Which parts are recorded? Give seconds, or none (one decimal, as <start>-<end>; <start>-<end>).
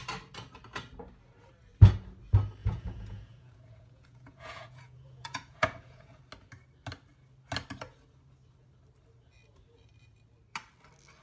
0.0-2.6; 6.2-11.2